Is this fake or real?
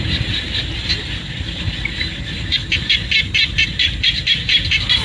fake